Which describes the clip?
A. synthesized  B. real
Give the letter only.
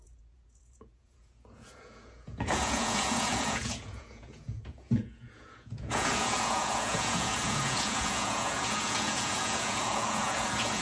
A